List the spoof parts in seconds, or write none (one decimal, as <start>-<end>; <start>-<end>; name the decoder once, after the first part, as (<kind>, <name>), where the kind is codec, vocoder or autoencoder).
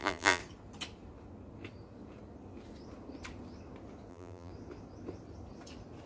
0.0-0.4 (vocoder, BigVGAN v2); 4.1-4.5